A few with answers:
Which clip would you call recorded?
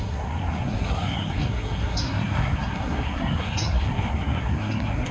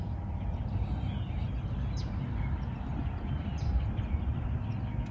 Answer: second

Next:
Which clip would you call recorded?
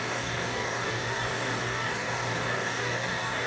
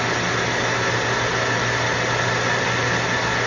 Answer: second